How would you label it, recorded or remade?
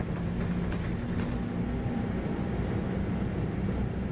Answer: recorded